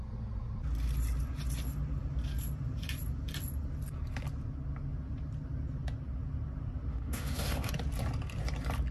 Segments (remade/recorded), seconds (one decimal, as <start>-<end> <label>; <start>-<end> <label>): 0.0-6.9 recorded; 6.9-7.7 remade; 7.7-8.9 recorded